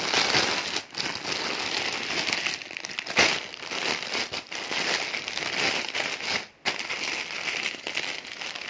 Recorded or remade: recorded